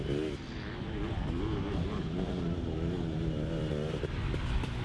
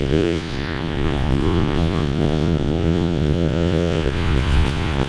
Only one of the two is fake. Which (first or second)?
second